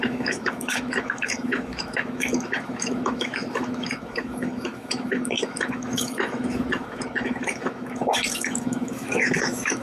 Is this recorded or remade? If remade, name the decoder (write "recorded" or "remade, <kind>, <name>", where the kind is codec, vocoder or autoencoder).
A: remade, autoencoder, DAC-VAE